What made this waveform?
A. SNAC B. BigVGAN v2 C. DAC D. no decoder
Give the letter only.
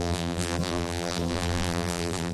B